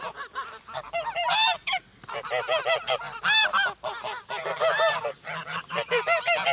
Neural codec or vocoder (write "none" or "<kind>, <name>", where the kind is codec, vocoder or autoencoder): vocoder, BigVGAN v2